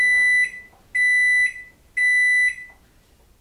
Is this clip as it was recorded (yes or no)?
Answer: yes